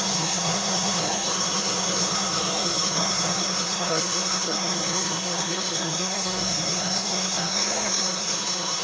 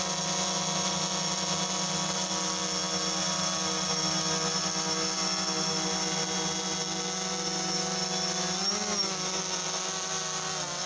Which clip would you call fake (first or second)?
first